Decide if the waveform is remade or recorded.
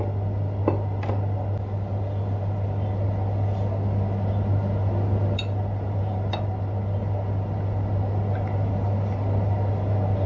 recorded